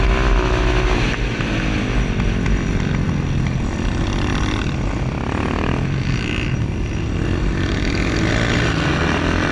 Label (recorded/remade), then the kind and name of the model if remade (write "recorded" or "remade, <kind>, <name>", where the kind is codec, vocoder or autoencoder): recorded